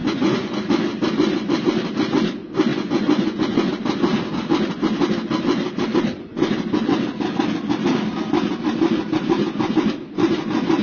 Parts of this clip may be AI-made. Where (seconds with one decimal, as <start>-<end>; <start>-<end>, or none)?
0.0-0.6; 2.7-3.7